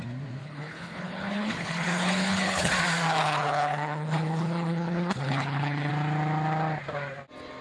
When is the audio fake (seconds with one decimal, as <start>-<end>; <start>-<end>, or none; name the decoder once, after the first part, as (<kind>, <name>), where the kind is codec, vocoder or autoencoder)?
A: 0.4-2.7 (codec, HILCodec); 3.2-5.9